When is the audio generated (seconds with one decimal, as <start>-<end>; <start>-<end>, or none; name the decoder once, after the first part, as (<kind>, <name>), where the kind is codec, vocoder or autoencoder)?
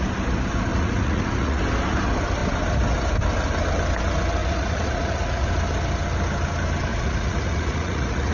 0.7-1.6 (vocoder, Vocos); 4.4-5.5; 6.9-8.3